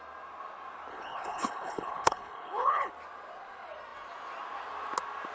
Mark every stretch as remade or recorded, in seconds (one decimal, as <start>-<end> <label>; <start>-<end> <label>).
0.0-0.9 recorded; 0.9-2.9 remade; 2.9-5.3 recorded